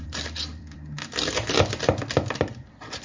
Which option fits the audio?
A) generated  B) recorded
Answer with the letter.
A